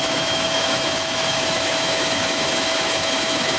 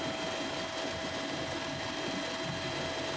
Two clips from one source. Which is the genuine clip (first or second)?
second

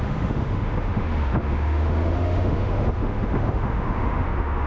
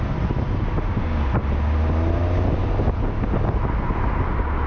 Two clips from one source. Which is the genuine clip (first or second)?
second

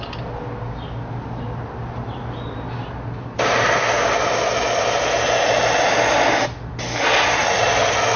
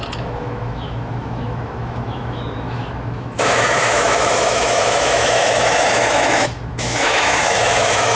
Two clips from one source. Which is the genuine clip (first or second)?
first